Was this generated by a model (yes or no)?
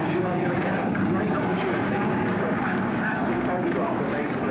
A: yes